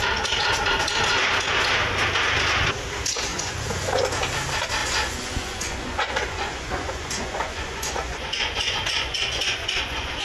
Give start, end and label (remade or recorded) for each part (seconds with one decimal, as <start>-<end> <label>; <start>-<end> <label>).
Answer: 0.0-3.3 recorded; 3.3-4.0 remade; 4.0-4.8 recorded; 4.8-10.2 remade